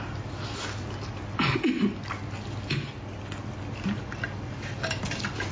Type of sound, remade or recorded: recorded